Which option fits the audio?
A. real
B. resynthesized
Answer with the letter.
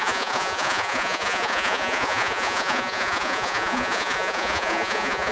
B